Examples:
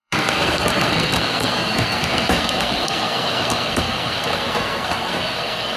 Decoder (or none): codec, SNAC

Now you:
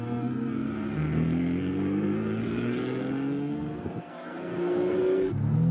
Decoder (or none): codec, SNAC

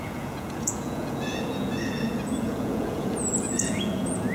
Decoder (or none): vocoder, Vocos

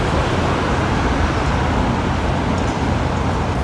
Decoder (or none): none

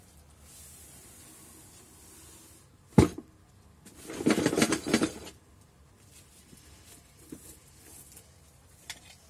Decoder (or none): none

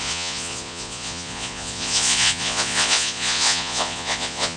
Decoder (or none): vocoder, Vocos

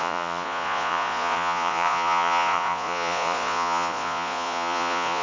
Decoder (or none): vocoder, Vocos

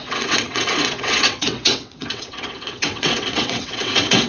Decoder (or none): vocoder, WaveNeXt